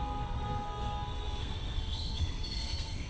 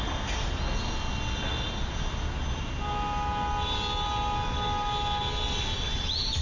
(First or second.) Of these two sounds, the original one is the second